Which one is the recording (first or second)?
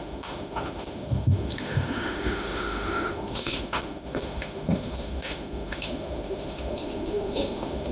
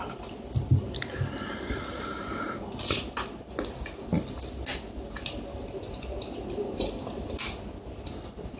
second